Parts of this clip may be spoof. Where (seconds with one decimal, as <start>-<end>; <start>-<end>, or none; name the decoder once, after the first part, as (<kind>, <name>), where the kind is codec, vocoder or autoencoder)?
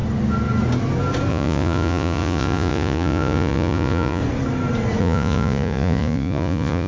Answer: 1.3-4.2 (vocoder, Vocos); 5.0-6.9